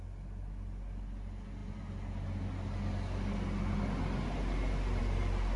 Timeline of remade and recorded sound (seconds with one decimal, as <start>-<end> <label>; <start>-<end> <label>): 0.0-5.6 recorded